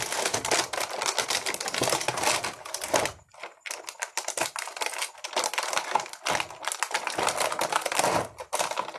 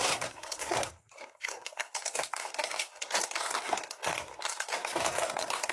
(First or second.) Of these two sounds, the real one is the first